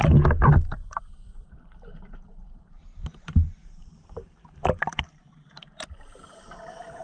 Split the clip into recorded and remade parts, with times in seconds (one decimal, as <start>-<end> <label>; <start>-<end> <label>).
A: 0.0-1.3 recorded; 1.3-5.5 remade; 5.5-7.0 recorded